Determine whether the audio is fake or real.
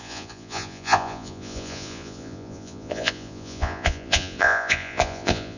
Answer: fake